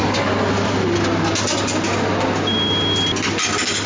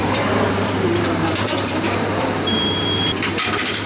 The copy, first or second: second